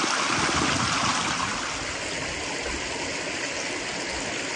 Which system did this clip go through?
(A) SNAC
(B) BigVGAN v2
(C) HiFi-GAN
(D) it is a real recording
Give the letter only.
D